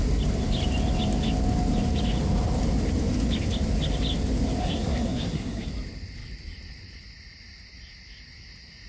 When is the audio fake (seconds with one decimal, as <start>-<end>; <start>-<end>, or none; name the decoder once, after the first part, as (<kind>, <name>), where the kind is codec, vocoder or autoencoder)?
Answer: 4.6-5.7 (codec, SNAC)